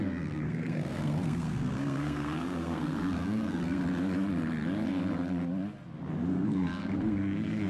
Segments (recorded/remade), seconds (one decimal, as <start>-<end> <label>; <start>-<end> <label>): 0.0-3.8 remade; 3.8-6.3 recorded; 6.3-7.7 remade